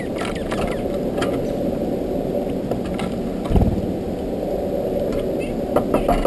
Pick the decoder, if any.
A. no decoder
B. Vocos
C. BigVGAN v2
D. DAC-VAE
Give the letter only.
A